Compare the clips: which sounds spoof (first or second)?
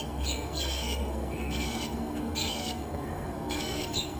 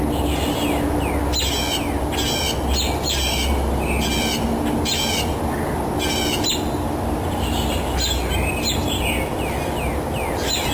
first